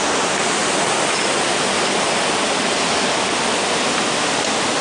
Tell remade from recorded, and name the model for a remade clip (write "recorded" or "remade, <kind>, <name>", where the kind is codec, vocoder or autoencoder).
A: recorded